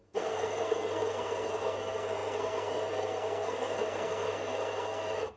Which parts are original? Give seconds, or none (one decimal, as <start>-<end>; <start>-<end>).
none